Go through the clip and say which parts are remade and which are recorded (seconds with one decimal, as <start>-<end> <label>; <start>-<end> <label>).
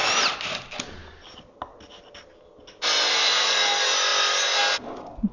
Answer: 0.0-5.3 recorded